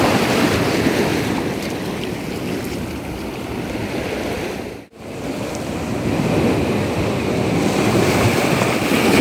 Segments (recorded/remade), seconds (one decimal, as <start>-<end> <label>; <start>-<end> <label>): 0.0-1.1 recorded; 1.1-4.0 remade; 4.0-9.2 recorded

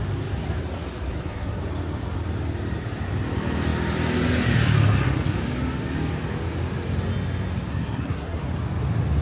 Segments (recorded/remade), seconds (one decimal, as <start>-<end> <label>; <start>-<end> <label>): 0.0-1.1 recorded; 1.1-1.6 remade; 1.6-7.7 recorded; 7.7-8.4 remade; 8.4-9.2 recorded

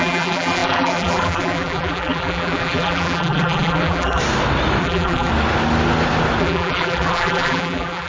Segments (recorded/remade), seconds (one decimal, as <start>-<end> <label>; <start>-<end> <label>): 0.0-4.2 remade; 4.2-4.8 recorded; 4.8-5.3 remade; 5.3-6.4 recorded; 6.4-8.1 remade